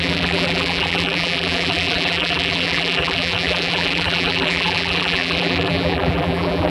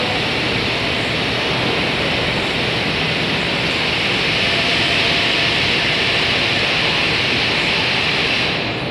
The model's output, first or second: first